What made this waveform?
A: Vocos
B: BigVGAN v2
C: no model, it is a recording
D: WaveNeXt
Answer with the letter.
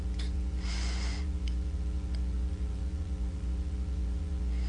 A